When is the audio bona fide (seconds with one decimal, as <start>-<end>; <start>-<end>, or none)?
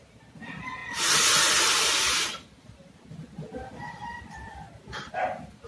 none